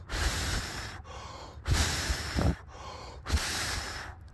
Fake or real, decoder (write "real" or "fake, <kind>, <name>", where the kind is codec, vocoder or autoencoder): fake, vocoder, BigVGAN v2